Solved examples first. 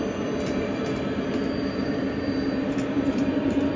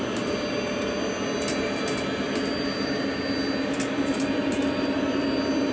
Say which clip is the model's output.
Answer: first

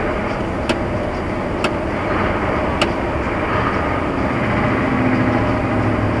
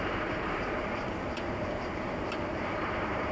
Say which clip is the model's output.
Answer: second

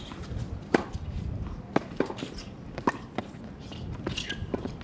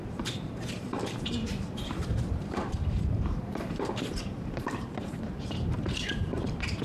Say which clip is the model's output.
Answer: second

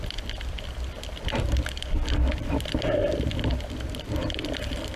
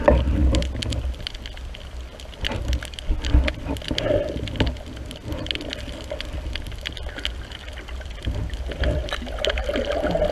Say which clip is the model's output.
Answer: first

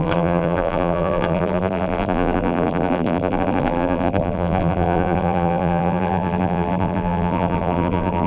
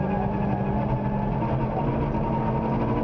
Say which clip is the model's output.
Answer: first